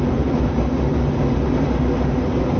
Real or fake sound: real